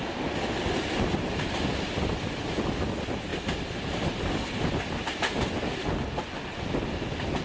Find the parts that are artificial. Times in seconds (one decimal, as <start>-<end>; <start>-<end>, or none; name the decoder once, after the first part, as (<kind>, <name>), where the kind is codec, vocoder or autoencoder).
none